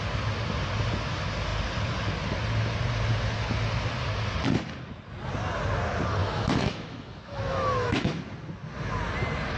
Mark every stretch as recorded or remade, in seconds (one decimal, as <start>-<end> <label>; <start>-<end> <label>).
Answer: 0.0-6.2 recorded; 6.2-8.2 remade; 8.2-9.6 recorded